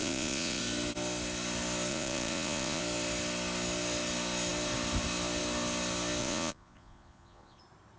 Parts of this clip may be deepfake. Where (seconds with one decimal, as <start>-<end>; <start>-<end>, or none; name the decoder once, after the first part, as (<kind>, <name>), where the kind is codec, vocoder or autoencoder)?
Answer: 0.0-0.6 (vocoder, Vocos); 1.9-2.8; 6.2-7.6